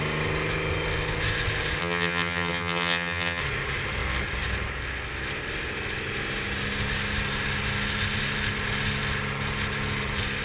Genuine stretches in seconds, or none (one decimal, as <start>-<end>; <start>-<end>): 0.0-1.8; 3.4-10.4